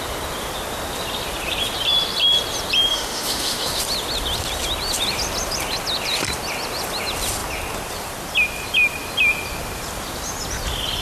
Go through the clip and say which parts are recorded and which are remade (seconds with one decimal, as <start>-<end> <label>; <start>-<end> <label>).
0.0-2.9 recorded; 2.9-3.8 remade; 3.8-11.0 recorded